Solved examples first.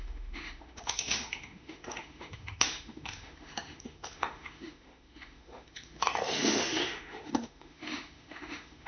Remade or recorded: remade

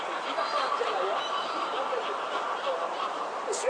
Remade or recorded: recorded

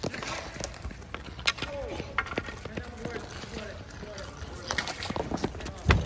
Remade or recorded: recorded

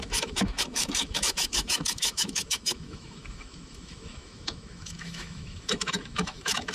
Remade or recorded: remade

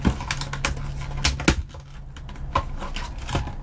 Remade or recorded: recorded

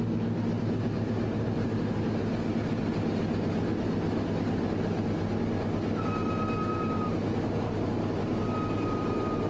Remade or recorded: recorded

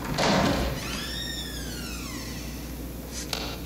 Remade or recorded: recorded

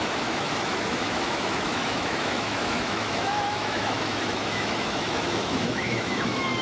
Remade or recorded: remade